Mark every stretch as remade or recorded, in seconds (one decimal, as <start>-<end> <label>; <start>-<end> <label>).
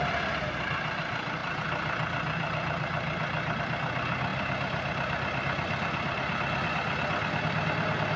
0.0-8.2 recorded